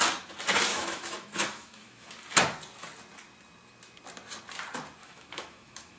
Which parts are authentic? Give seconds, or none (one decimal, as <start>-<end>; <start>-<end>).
0.0-0.7; 2.1-5.0